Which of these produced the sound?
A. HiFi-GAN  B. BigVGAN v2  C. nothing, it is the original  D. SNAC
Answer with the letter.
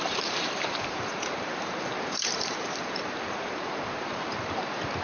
B